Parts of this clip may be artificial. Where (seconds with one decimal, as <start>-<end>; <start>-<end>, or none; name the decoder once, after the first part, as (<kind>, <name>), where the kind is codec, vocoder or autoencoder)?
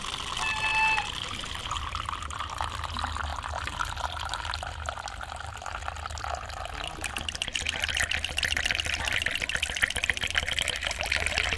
none